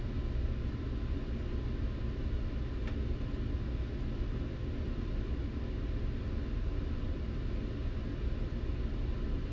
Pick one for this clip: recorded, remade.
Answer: recorded